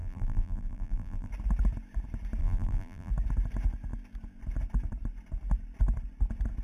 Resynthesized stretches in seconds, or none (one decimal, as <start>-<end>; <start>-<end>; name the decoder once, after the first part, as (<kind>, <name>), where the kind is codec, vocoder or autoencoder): 0.0-1.3 (vocoder, BigVGAN v2); 2.4-3.1